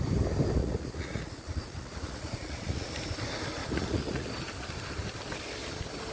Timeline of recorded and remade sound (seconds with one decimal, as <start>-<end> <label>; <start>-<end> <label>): 0.0-0.6 recorded; 0.6-2.9 remade; 2.9-3.6 recorded; 3.6-4.3 remade; 4.3-6.1 recorded